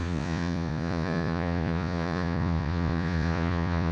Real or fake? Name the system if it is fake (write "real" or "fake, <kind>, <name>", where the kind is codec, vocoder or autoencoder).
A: fake, vocoder, Vocos